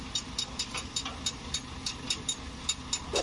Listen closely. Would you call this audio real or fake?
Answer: real